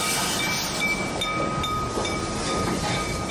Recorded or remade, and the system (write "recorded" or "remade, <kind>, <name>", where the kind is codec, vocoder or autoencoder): recorded